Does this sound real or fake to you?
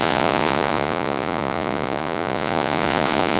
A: fake